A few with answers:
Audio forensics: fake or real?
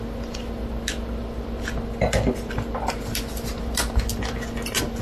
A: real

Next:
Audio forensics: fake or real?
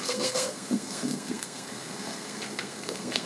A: fake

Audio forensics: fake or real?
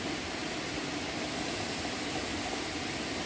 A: real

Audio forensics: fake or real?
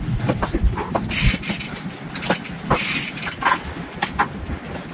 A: real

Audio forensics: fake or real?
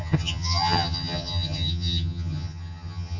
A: fake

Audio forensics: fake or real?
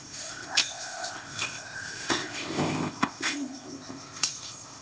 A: fake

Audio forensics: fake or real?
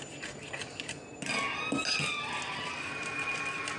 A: real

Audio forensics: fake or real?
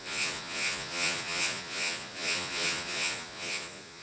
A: fake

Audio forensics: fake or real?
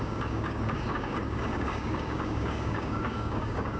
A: fake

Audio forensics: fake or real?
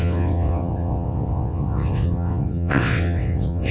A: fake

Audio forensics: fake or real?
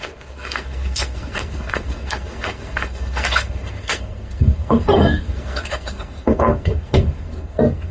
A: fake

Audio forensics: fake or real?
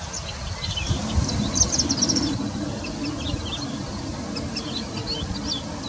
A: real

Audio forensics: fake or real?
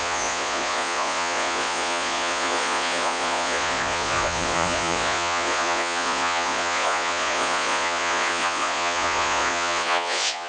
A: fake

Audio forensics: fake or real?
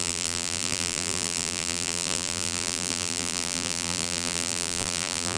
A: fake